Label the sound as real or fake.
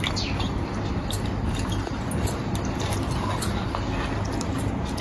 real